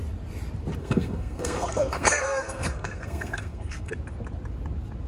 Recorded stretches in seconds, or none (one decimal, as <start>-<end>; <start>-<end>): 0.0-0.8; 3.9-5.1